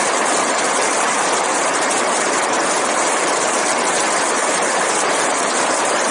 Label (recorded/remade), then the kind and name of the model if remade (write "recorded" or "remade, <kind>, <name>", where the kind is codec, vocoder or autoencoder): remade, vocoder, BigVGAN v2